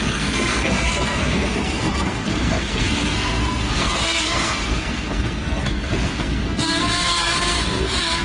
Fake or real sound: fake